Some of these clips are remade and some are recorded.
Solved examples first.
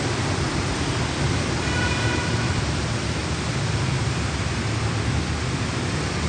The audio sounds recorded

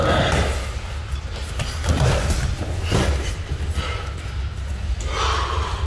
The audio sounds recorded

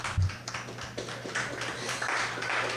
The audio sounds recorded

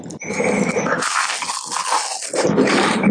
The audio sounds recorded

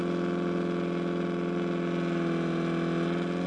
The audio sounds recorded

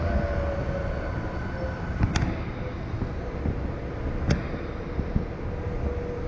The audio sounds recorded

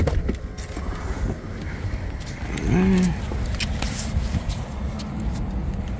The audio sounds recorded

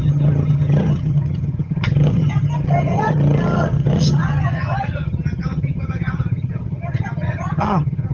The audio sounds remade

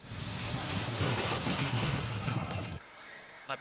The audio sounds remade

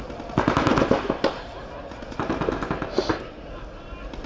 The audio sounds recorded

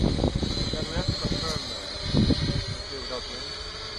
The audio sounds recorded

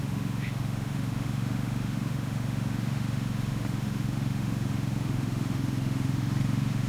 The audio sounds remade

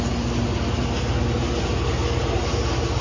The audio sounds recorded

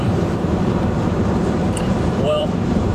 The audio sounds remade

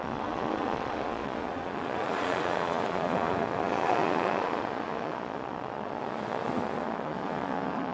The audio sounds remade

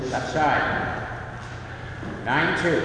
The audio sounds recorded